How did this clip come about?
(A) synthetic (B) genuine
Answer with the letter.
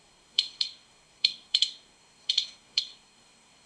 A